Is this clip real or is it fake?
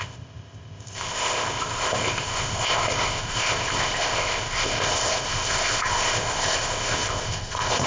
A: fake